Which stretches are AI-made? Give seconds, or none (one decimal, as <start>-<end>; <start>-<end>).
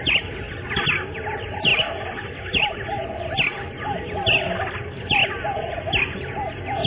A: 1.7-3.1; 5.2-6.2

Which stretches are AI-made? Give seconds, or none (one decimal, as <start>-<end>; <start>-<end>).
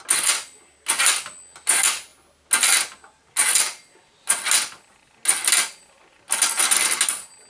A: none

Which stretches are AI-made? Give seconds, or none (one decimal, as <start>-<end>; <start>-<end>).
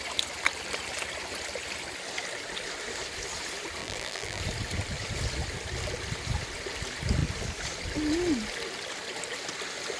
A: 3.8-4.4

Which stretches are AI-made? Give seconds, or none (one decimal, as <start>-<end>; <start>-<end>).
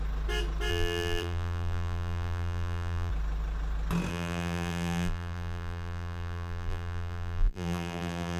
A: 0.7-3.1; 4.1-8.4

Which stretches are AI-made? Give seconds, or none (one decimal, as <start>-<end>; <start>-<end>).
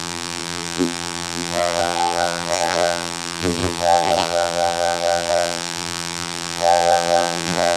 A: 0.0-7.8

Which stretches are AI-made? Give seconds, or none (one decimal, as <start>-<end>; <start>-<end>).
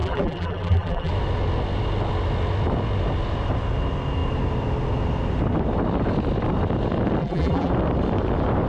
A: 0.0-1.1; 7.2-7.7